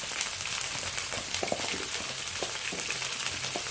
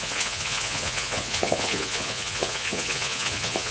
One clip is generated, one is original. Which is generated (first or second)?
second